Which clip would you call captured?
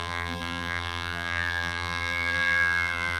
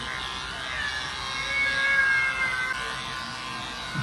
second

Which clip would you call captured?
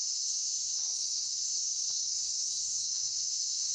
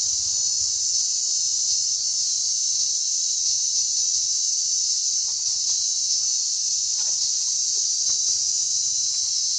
second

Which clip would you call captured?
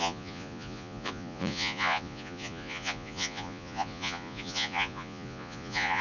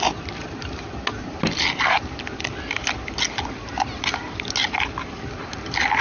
second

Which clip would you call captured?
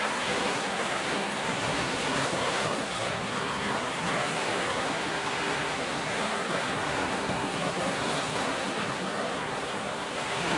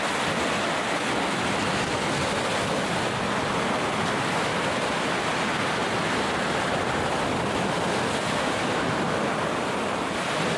second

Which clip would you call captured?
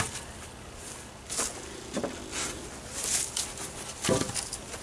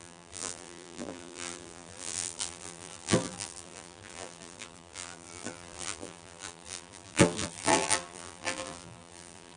first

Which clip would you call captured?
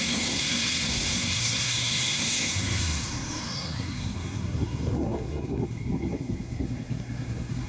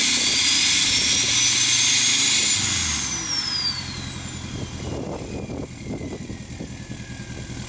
second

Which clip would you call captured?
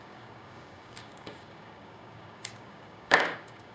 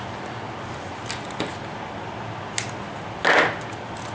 second